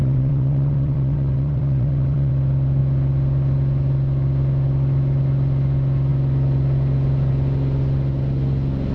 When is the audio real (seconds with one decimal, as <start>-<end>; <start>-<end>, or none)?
2.3-8.9